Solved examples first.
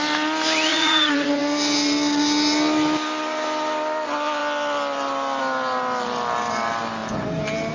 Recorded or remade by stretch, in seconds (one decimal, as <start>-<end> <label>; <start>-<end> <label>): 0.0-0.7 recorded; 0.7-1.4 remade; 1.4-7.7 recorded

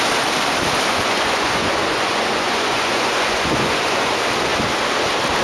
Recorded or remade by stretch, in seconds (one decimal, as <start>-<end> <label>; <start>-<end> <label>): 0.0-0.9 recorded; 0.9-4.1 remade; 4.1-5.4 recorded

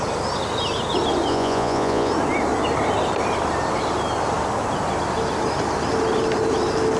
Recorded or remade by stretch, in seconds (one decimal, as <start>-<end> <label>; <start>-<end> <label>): 0.0-1.3 recorded; 1.3-2.1 remade; 2.1-7.0 recorded

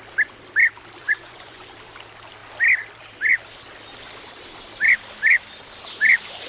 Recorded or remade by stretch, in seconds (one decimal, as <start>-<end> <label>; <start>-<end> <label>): 0.0-1.0 recorded; 1.0-1.6 remade; 1.6-6.5 recorded

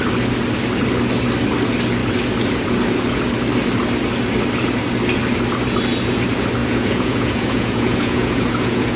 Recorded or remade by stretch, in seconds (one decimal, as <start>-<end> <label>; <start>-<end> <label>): 0.0-6.6 recorded; 6.6-9.0 remade

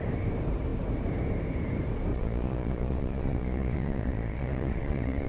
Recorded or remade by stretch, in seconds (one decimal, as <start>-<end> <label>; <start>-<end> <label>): 0.0-2.1 recorded; 2.1-5.3 remade

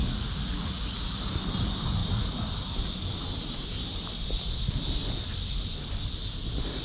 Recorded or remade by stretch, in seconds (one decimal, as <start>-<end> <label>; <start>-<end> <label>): 0.0-1.3 remade; 1.3-6.8 recorded

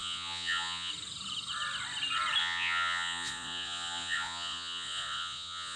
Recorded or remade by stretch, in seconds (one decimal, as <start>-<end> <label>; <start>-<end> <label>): 0.0-0.9 remade; 0.9-2.4 recorded; 2.4-5.8 remade